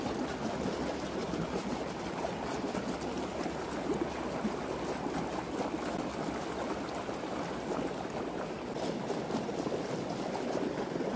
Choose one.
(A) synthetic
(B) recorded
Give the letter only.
B